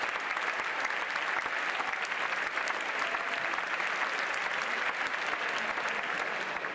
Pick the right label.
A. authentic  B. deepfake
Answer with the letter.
A